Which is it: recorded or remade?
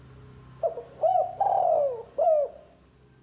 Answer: recorded